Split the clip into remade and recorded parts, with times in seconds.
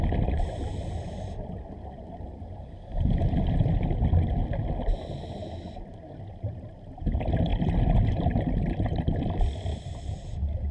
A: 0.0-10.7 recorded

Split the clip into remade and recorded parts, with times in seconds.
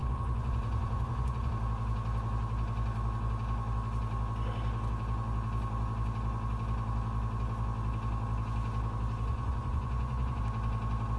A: 0.0-1.5 remade; 1.5-9.3 recorded; 9.3-10.4 remade; 10.4-11.2 recorded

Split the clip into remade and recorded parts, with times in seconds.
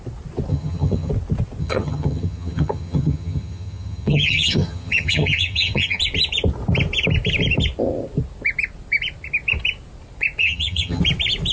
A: 0.0-0.5 recorded; 0.5-1.1 remade; 1.1-1.6 recorded; 1.6-6.0 remade; 6.0-10.4 recorded; 10.4-11.0 remade; 11.0-11.5 recorded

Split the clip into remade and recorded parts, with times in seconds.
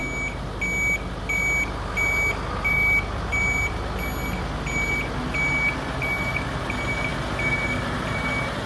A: 0.0-8.7 recorded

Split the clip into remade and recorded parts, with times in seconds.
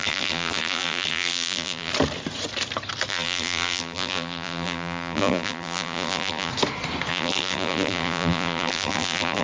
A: 0.0-1.9 remade; 1.9-3.1 recorded; 3.1-6.5 remade; 6.5-7.1 recorded; 7.1-9.4 remade